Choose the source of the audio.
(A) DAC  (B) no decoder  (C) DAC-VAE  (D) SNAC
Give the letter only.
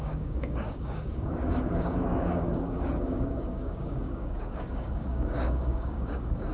A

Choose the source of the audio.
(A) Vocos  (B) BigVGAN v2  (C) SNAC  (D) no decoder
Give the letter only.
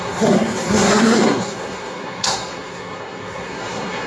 C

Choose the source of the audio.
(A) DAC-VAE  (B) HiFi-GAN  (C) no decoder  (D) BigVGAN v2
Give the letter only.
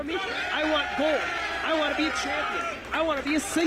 C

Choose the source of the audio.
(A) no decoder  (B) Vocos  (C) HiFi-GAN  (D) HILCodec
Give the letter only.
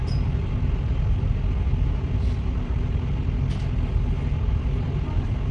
A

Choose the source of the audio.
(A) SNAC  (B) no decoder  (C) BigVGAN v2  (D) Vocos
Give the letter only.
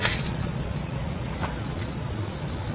D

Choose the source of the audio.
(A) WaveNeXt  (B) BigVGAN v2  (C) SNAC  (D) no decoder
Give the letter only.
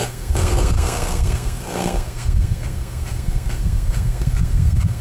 C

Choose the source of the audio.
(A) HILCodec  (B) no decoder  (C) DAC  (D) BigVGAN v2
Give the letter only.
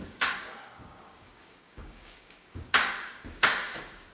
C